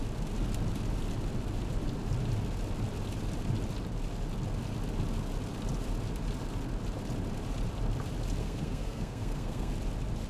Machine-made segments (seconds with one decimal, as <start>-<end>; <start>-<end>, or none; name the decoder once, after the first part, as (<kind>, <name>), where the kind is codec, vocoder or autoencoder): 8.4-9.7 (codec, SNAC)